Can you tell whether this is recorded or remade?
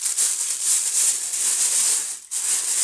recorded